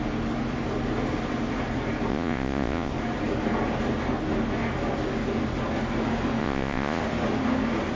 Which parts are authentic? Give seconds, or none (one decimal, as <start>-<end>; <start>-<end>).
0.0-2.1; 2.9-6.4; 7.0-8.0